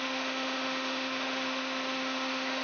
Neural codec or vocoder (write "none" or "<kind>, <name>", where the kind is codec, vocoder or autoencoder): autoencoder, DAC-VAE